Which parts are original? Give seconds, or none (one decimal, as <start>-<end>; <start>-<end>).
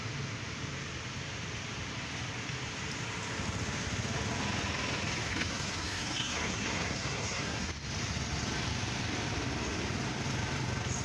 0.0-5.3; 7.7-11.0